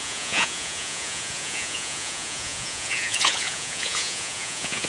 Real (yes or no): no